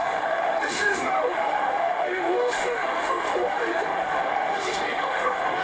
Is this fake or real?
fake